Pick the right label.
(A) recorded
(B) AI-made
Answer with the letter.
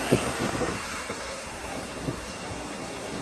B